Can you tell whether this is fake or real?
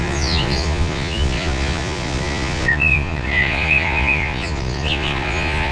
fake